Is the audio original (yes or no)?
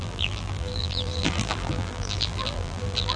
no